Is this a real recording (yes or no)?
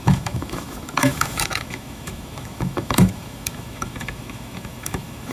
no